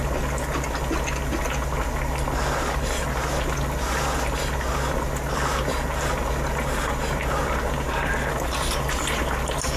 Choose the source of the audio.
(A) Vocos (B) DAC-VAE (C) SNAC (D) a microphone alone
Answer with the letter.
D